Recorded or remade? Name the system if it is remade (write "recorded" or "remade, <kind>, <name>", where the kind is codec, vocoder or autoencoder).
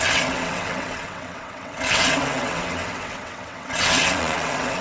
remade, vocoder, WaveNeXt